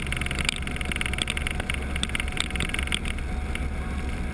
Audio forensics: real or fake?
real